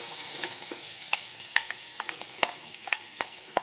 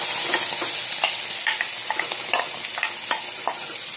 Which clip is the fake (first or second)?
first